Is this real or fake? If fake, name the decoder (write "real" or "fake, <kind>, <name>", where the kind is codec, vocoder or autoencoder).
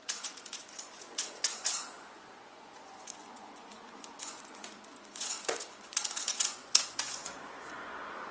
fake, vocoder, Vocos